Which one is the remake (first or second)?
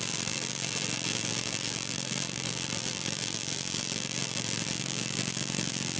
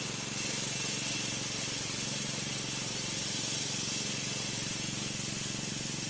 first